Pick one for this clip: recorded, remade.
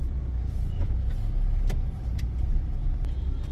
recorded